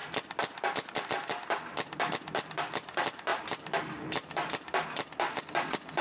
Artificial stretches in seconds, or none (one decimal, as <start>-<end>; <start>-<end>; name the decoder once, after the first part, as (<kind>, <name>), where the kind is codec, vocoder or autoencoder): none